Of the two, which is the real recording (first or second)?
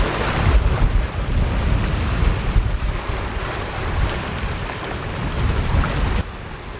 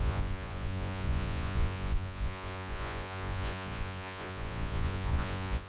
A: first